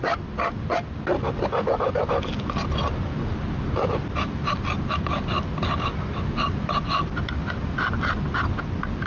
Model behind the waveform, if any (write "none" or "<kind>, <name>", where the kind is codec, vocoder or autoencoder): none